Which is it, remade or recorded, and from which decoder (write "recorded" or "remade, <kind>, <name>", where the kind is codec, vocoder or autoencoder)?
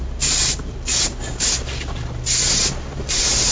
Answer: recorded